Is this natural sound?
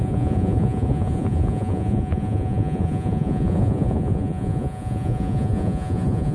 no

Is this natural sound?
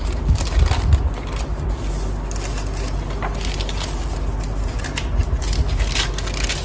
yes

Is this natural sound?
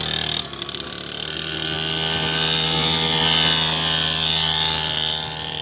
yes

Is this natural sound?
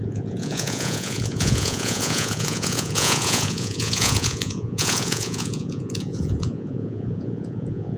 no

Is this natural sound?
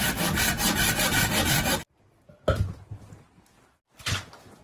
yes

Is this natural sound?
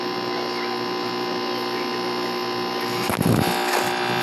yes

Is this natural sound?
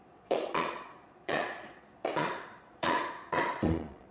no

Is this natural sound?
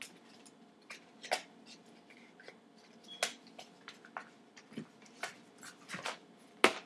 yes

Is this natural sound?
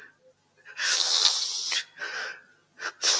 yes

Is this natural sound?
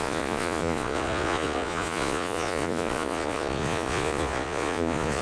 no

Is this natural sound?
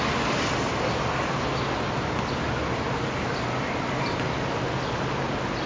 yes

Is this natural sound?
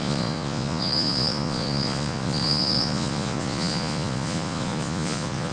no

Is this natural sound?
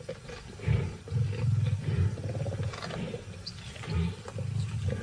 yes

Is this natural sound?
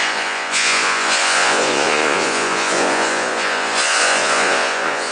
no